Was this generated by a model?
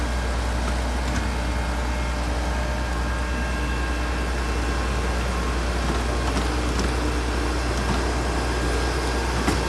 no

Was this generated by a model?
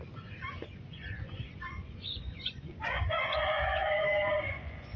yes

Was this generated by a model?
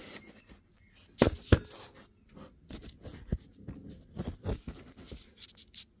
no